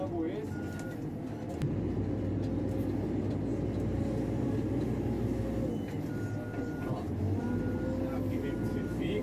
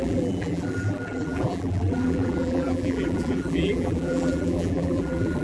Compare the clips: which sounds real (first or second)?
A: first